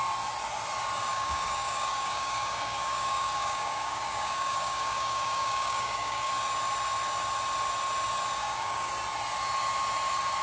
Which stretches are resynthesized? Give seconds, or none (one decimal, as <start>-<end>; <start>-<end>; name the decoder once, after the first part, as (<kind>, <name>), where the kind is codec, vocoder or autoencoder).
1.1-6.3 (codec, DAC); 8.4-8.9